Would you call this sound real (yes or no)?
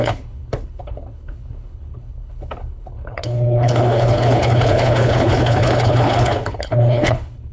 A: no